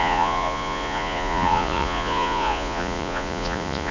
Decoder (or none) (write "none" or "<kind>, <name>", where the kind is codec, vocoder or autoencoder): vocoder, Vocos